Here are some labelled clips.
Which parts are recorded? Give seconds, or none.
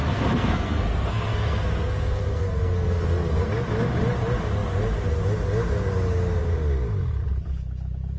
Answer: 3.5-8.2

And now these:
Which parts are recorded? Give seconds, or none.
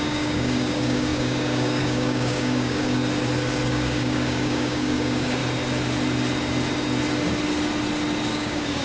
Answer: 3.0-3.7; 5.4-8.3